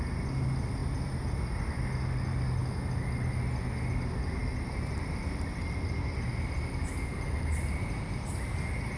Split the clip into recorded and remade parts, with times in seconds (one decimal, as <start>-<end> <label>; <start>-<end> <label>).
0.0-4.4 recorded; 4.4-5.0 remade; 5.0-7.1 recorded; 7.1-8.6 remade; 8.6-9.0 recorded